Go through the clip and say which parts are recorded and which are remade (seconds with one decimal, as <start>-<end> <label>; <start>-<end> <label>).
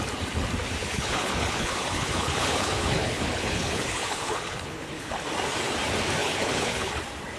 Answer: 0.0-0.8 recorded; 0.8-5.2 remade; 5.2-6.2 recorded; 6.2-6.9 remade; 6.9-7.4 recorded